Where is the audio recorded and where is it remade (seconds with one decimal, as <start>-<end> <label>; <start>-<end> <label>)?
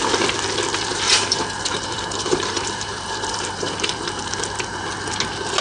0.0-0.9 recorded; 0.9-4.3 remade; 4.3-5.6 recorded